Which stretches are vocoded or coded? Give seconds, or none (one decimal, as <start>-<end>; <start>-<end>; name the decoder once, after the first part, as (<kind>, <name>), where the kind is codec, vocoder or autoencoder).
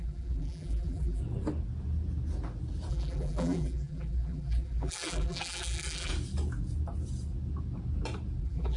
0.0-1.2 (vocoder, BigVGAN v2); 2.9-6.1; 8.4-8.8